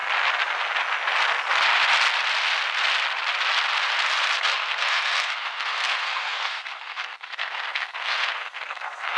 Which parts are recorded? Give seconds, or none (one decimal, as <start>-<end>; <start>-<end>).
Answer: 0.0-4.4